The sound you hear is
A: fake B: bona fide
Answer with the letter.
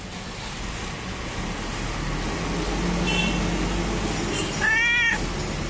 B